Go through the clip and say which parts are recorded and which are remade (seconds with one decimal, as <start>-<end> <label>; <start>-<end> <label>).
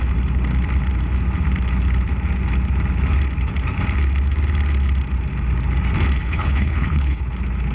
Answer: 0.0-6.2 recorded; 6.2-7.2 remade; 7.2-7.7 recorded